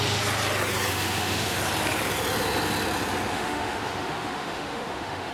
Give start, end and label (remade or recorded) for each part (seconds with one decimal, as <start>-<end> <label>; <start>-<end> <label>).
0.0-0.9 recorded; 0.9-1.6 remade; 1.6-3.3 recorded; 3.3-5.3 remade